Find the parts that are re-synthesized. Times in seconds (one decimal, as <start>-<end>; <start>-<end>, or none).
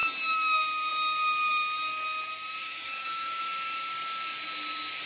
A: 2.6-3.4